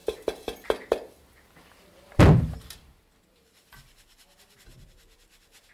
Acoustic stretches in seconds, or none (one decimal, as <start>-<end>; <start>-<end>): 0.0-5.7